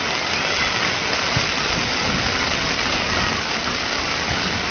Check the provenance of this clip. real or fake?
real